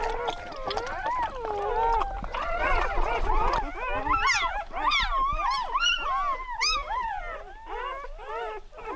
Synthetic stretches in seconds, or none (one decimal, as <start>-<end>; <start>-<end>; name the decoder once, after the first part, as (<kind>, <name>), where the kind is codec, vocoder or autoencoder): 2.3-3.3 (vocoder, Vocos)